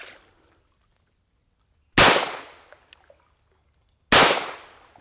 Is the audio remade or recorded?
recorded